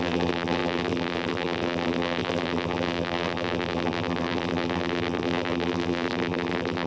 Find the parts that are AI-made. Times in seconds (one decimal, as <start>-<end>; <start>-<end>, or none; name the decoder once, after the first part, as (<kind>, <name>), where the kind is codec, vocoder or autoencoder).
0.0-6.9 (vocoder, BigVGAN v2)